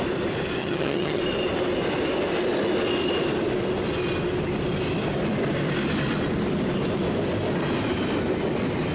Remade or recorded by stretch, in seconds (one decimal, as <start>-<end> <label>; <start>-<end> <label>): 0.0-0.6 recorded; 0.6-1.2 remade; 1.2-8.9 recorded